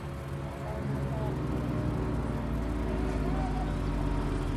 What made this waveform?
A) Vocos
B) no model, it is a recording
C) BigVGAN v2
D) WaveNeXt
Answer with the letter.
B